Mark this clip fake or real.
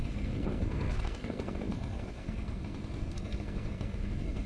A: fake